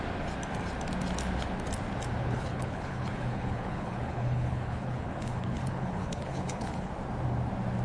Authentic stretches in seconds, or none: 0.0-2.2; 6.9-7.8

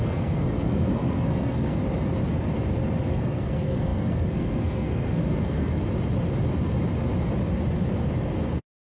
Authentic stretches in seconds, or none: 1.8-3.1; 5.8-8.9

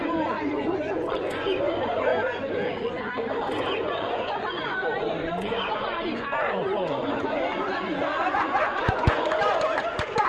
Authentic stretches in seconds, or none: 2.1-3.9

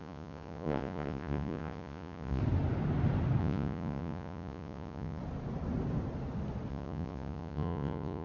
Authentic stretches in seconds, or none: 2.4-3.4; 5.2-6.7

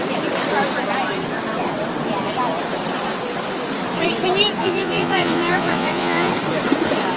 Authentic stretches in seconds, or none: 0.0-4.6; 6.3-7.2